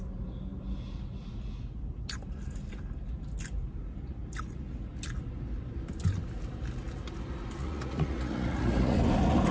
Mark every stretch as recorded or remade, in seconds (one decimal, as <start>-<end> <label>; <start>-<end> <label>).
0.0-7.6 recorded; 7.6-9.0 remade; 9.0-9.5 recorded

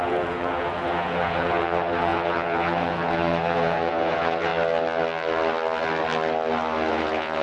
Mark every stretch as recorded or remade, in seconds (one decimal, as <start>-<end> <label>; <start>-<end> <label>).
0.0-4.5 remade; 4.5-6.9 recorded; 6.9-7.4 remade

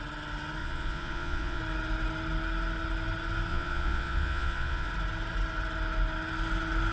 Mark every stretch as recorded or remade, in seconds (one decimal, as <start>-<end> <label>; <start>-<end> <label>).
0.0-0.6 recorded; 0.6-1.6 remade; 1.6-3.5 recorded; 3.5-4.9 remade; 4.9-6.9 recorded

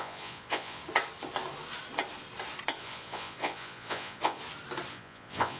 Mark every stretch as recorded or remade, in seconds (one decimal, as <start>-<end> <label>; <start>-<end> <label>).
0.0-0.8 remade; 0.8-2.8 recorded; 2.8-4.4 remade; 4.4-4.9 recorded; 4.9-5.6 remade

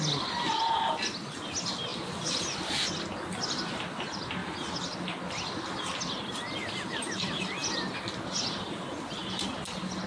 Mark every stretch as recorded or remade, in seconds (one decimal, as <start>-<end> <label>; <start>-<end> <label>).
0.0-10.1 recorded

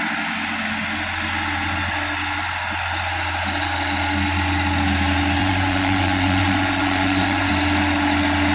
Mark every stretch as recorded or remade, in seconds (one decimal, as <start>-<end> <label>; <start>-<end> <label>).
0.0-5.4 recorded; 5.4-7.5 remade; 7.5-8.5 recorded

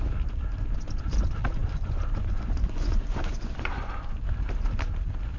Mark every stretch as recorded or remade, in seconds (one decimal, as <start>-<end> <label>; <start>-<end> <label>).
0.0-1.6 recorded; 1.6-3.9 remade; 3.9-5.4 recorded

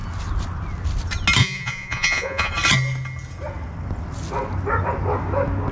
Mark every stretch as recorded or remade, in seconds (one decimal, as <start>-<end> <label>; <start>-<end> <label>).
0.0-1.4 recorded; 1.4-2.5 remade; 2.5-5.7 recorded